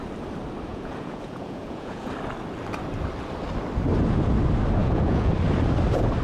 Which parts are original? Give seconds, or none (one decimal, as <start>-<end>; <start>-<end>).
0.0-0.7; 2.1-4.8; 5.3-6.2